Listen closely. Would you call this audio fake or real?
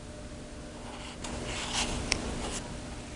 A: real